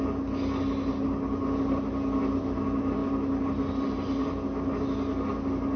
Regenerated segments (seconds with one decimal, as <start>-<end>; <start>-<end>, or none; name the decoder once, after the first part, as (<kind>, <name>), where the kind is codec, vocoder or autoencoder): none